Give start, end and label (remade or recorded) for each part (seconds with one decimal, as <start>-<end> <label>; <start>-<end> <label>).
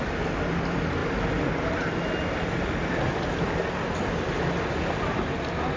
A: 0.0-5.8 recorded